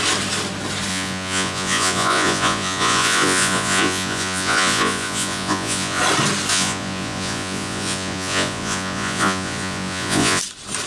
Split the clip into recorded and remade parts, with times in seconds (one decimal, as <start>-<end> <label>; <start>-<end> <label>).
0.0-0.9 recorded; 0.9-6.0 remade; 6.0-6.5 recorded; 6.5-10.4 remade; 10.4-10.9 recorded